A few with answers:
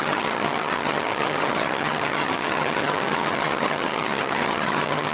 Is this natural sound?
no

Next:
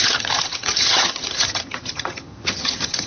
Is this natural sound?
no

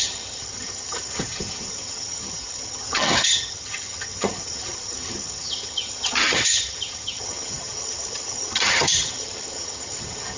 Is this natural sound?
no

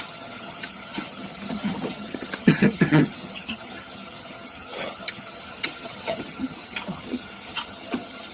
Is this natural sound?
no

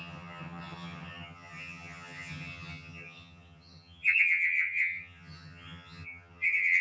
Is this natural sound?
no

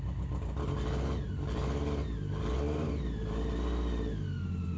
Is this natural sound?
yes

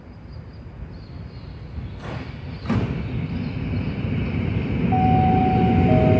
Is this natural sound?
yes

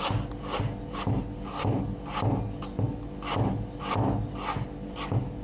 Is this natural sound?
yes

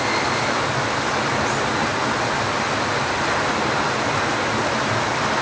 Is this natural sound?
yes